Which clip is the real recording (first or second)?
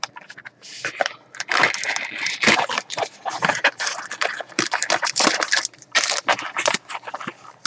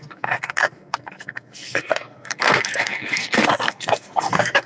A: first